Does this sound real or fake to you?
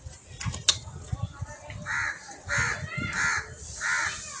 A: real